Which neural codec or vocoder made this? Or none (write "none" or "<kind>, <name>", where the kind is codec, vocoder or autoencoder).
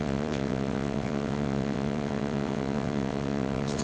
vocoder, WaveNeXt